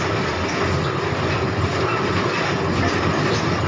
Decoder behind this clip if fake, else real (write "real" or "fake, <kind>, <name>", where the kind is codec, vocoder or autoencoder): real